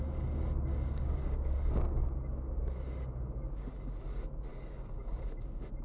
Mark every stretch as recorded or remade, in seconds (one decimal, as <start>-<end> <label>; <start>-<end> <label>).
0.0-0.7 recorded; 0.7-3.7 remade; 3.7-4.5 recorded; 4.5-5.2 remade; 5.2-5.8 recorded